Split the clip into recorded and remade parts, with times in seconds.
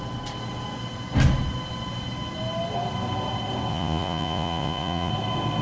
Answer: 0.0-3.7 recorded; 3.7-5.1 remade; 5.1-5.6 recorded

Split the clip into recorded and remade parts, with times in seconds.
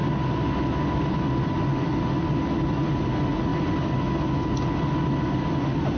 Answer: 0.0-6.0 recorded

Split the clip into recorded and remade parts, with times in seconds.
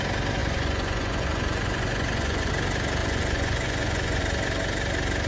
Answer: 0.0-0.4 recorded; 0.4-2.5 remade; 2.5-3.0 recorded; 3.0-4.2 remade; 4.2-5.3 recorded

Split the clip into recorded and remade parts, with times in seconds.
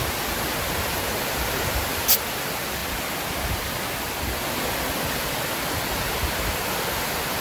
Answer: 0.0-7.4 recorded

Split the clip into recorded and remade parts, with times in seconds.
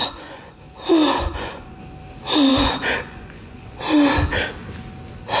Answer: 0.0-0.6 remade; 0.6-1.0 recorded; 1.0-1.8 remade; 1.8-2.5 recorded; 2.5-3.8 remade; 3.8-5.4 recorded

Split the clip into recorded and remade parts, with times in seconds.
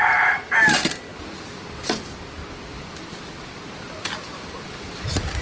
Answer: 0.0-5.4 recorded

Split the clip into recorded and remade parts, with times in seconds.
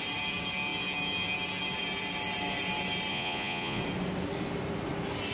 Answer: 0.0-3.1 recorded; 3.1-3.8 remade; 3.8-5.3 recorded